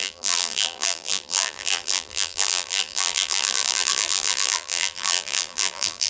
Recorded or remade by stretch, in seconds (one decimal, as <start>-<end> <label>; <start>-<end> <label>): 0.0-6.1 remade